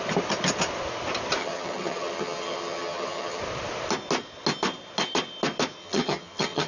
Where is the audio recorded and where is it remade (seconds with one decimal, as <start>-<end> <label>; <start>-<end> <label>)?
0.0-1.4 recorded; 1.4-3.4 remade; 3.4-5.8 recorded; 5.8-6.7 remade